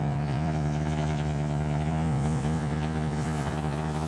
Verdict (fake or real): fake